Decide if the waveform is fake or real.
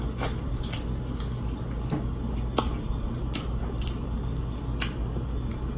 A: real